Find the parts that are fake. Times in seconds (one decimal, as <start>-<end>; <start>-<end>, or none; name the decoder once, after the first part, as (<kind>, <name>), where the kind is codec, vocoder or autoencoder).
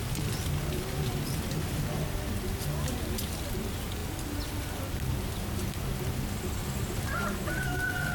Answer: 6.6-8.1 (vocoder, BigVGAN v2)